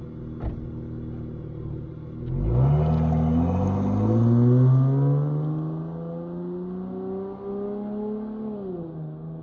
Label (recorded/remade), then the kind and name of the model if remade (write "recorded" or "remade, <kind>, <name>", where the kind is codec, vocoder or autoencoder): recorded